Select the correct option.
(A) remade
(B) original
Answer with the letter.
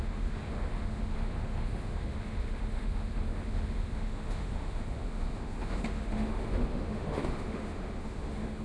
A